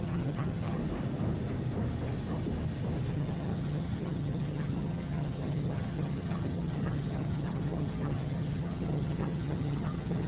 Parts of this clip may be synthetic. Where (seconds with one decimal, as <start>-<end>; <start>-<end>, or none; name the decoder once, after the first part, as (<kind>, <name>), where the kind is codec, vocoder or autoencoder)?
0.0-0.8 (vocoder, HiFi-GAN); 3.1-10.3